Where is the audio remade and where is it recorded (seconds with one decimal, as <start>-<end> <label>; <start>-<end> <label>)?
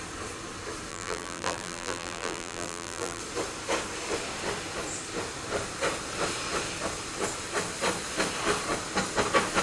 0.0-0.9 recorded; 0.9-3.2 remade; 3.2-9.6 recorded